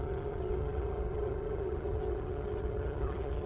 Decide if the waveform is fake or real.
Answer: fake